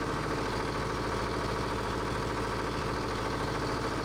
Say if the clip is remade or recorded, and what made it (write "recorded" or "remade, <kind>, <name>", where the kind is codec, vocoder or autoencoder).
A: recorded